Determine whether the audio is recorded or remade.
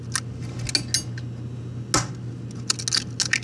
recorded